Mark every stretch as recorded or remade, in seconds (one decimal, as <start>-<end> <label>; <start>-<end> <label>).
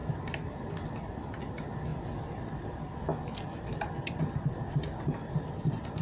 0.0-6.0 recorded